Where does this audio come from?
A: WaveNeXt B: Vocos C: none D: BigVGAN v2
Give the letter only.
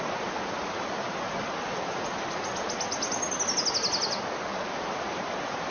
C